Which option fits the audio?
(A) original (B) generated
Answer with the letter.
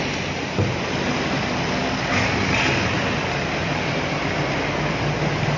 A